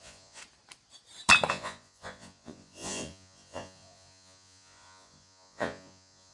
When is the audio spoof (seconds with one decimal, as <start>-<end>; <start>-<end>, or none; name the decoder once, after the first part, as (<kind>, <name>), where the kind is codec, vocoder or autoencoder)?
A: 0.0-0.4 (vocoder, Vocos); 1.5-6.3